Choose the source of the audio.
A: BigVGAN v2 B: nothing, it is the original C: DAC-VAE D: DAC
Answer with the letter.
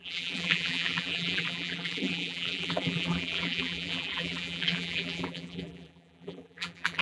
A